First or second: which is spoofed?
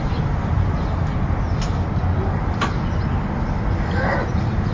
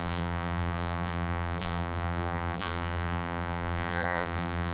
second